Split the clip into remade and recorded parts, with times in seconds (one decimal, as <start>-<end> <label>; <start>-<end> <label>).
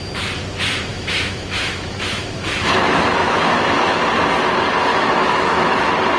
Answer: 0.0-0.9 recorded; 0.9-4.0 remade; 4.0-4.9 recorded; 4.9-5.8 remade; 5.8-6.2 recorded